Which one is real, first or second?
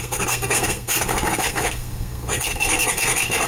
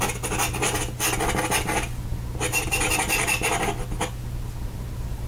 second